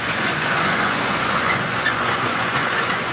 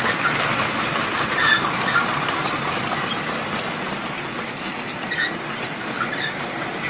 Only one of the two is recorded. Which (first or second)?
second